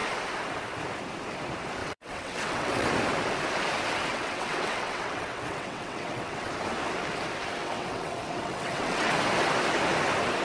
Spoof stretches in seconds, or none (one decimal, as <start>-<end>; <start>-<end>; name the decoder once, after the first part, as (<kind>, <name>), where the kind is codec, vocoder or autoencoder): 1.8-2.9 (vocoder, WaveNeXt); 4.1-6.5; 7.6-9.1